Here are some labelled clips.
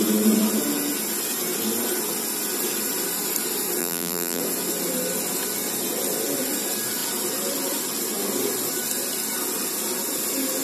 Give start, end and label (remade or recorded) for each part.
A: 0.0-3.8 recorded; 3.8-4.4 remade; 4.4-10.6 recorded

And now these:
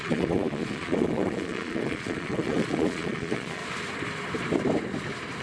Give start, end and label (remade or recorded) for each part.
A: 0.0-3.6 remade; 3.6-5.4 recorded

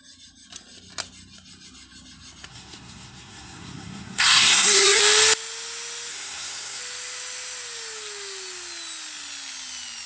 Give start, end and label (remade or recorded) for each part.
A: 0.0-2.5 recorded; 2.5-5.0 remade; 5.0-6.1 recorded; 6.1-6.8 remade; 6.8-10.1 recorded

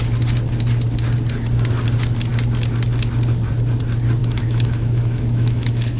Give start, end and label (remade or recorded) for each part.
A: 0.0-4.2 recorded; 4.2-6.0 remade